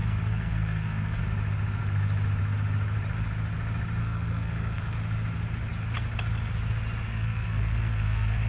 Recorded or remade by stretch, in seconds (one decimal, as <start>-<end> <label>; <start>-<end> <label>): 0.0-1.2 remade; 1.2-4.0 recorded; 4.0-5.0 remade; 5.0-7.1 recorded; 7.1-8.5 remade